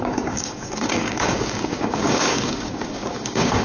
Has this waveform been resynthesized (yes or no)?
yes